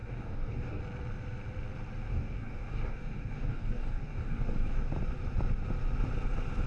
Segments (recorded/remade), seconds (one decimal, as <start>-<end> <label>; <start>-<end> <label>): 0.0-0.8 remade; 0.8-2.1 recorded; 2.1-4.9 remade; 4.9-6.7 recorded